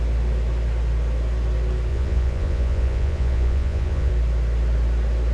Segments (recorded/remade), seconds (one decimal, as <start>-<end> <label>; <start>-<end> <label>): 0.0-1.9 recorded; 1.9-4.1 remade; 4.1-5.3 recorded